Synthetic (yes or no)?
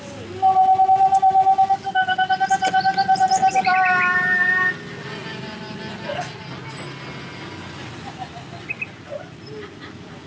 no